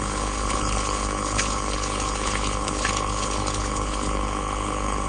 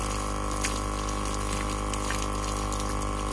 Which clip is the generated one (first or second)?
first